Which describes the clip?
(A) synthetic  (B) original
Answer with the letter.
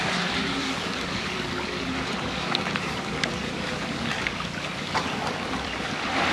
A